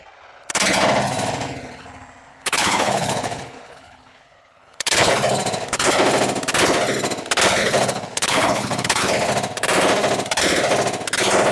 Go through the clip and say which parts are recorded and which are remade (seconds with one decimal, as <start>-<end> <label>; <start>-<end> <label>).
0.0-2.3 recorded; 2.3-5.1 remade; 5.1-7.6 recorded; 7.6-9.1 remade; 9.1-11.5 recorded